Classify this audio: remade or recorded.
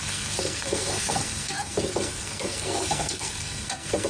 remade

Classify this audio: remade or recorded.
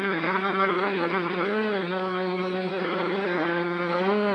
remade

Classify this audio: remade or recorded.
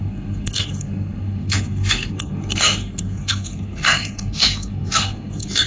remade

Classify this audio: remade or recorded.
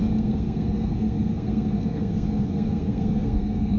remade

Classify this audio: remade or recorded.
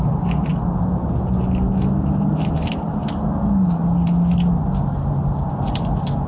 recorded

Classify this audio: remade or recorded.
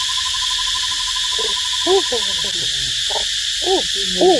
recorded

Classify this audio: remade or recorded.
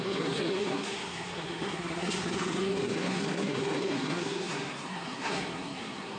remade